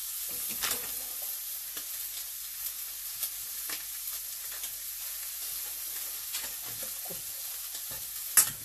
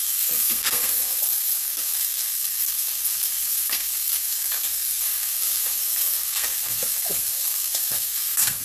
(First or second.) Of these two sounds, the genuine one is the first